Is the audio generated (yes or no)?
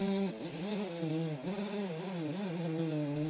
no